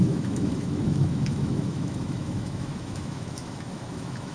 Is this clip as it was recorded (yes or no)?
no